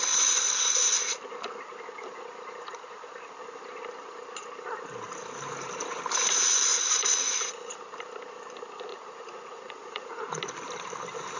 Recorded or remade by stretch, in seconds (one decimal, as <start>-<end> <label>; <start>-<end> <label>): 0.0-6.7 recorded; 6.7-7.7 remade; 7.7-8.9 recorded; 8.9-10.4 remade; 10.4-11.4 recorded